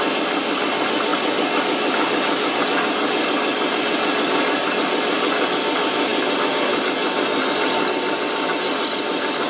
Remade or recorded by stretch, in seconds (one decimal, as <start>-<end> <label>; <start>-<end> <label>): 0.0-9.5 recorded